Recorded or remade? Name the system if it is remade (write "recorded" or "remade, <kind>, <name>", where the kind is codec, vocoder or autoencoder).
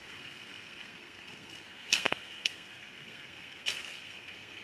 remade, codec, SNAC